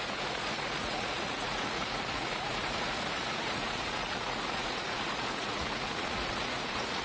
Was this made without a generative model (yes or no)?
no